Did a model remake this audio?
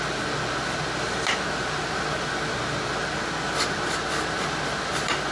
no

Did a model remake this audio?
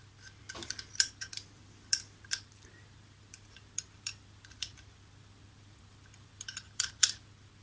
yes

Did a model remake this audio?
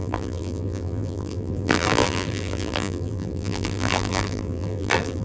yes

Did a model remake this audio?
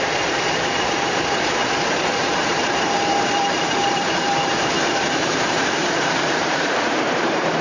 yes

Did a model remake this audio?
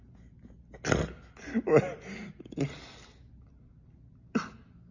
no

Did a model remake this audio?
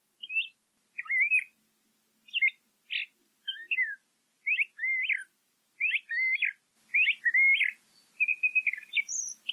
no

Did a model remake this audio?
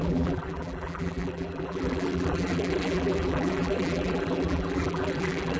yes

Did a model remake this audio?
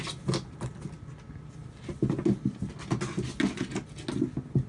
no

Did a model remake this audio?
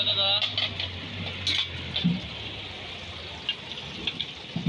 no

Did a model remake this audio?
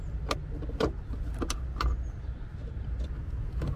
no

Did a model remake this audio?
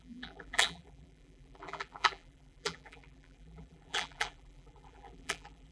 yes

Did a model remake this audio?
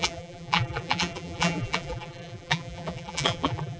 yes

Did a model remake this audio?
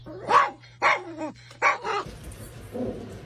no